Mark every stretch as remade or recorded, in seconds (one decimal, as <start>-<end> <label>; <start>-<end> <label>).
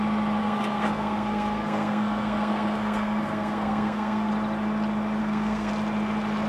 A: 0.0-0.4 recorded; 0.4-4.3 remade; 4.3-5.2 recorded; 5.2-5.7 remade; 5.7-6.5 recorded